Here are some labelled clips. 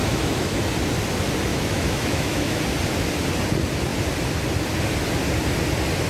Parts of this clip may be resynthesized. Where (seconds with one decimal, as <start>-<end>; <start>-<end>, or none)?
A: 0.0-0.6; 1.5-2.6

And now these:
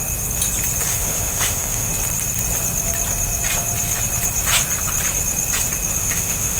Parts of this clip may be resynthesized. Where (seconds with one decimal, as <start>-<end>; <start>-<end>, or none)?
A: 0.9-1.9; 6.0-6.6

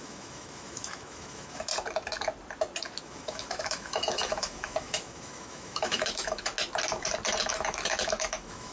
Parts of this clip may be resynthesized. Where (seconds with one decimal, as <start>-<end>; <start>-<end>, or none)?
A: 0.0-1.7; 3.0-6.5; 7.4-8.7